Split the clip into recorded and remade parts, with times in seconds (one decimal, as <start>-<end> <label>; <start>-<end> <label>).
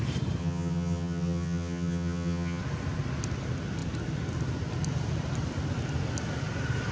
0.0-0.4 recorded; 0.4-2.6 remade; 2.6-6.9 recorded